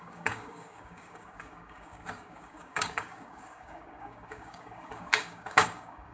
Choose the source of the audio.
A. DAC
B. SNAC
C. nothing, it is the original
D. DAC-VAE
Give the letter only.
A